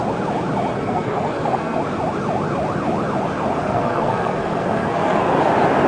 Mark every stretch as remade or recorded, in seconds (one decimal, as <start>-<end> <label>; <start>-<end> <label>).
0.0-0.7 recorded; 0.7-1.8 remade; 1.8-3.6 recorded; 3.6-5.4 remade; 5.4-5.9 recorded